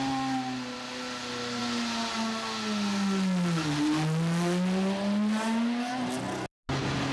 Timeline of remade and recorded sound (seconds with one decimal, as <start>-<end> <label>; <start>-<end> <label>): 0.0-7.1 recorded